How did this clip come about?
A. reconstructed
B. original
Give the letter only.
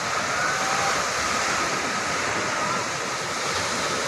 B